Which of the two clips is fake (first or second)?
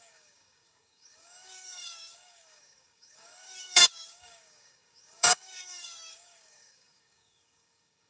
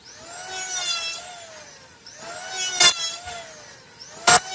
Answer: first